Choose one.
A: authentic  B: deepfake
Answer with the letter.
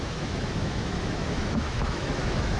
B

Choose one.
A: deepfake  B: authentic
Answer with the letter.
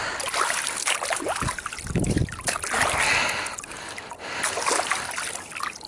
B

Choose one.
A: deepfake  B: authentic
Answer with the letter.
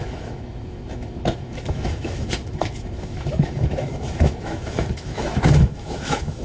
A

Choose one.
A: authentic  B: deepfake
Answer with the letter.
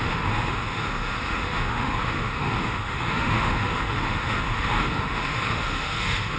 B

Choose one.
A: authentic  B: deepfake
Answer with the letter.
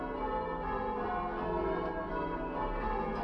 A